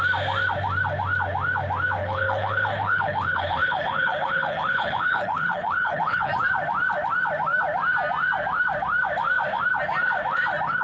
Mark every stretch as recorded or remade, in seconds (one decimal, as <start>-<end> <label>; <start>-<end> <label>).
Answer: 0.0-2.0 recorded; 2.0-6.3 remade; 6.3-10.8 recorded